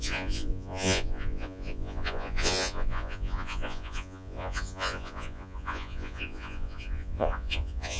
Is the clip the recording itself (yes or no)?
no